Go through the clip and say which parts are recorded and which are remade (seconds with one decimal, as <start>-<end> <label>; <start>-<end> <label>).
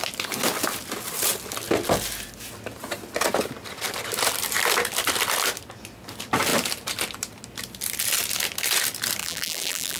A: 0.0-9.2 recorded; 9.2-10.0 remade